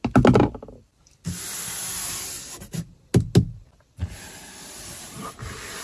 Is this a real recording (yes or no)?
yes